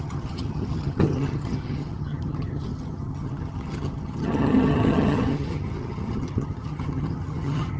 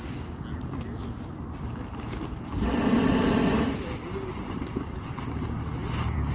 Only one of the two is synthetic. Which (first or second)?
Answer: first